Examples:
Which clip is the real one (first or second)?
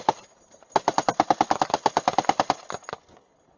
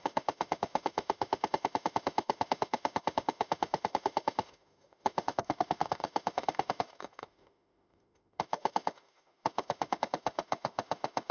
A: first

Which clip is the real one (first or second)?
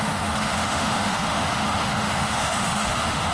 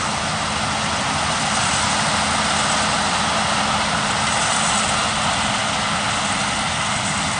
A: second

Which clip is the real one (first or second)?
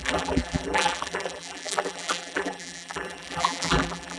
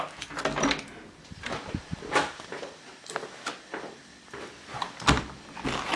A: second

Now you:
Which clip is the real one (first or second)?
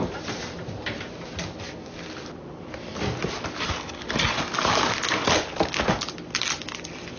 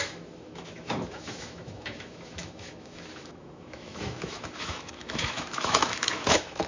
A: first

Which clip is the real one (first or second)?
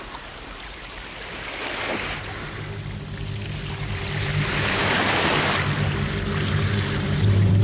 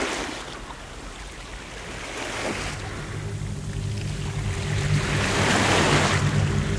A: second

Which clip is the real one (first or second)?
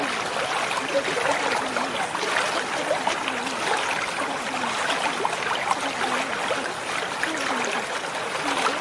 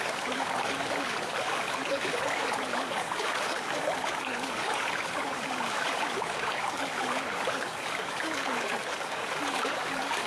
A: first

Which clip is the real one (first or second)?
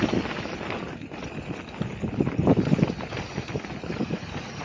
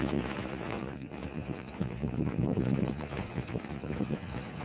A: first